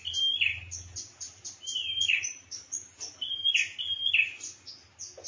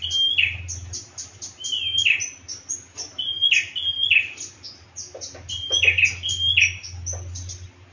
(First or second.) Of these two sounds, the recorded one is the second